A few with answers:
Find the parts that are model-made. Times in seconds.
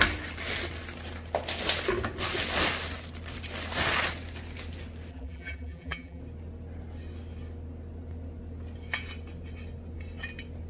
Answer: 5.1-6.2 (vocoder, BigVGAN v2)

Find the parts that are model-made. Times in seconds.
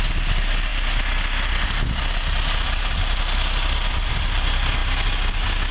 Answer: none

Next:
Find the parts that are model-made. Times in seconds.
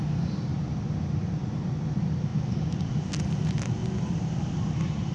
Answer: 0.5-1.5 (vocoder, BigVGAN v2); 2.3-2.9; 3.8-5.1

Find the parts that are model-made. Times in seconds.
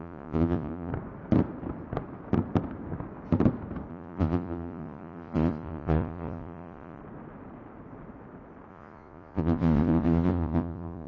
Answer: 0.0-0.9 (vocoder, Vocos); 3.9-7.0; 8.7-11.1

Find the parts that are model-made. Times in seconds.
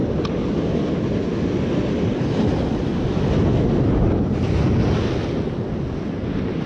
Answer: none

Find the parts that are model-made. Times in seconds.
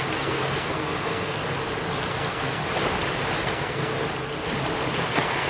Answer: 0.0-1.4 (codec, SNAC); 2.1-2.6; 3.4-3.9; 5.1-5.5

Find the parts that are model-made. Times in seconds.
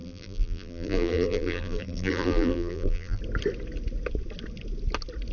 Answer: 0.0-3.2 (vocoder, BigVGAN v2)